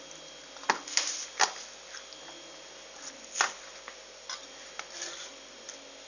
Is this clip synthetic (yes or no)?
no